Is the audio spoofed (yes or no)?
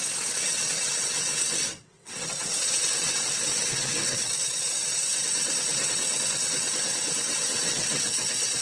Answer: yes